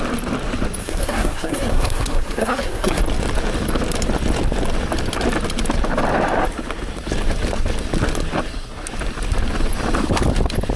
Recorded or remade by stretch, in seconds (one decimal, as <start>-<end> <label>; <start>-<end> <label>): 0.0-0.8 recorded; 0.8-3.0 remade; 3.0-10.8 recorded